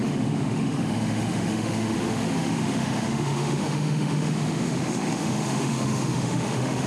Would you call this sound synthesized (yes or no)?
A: yes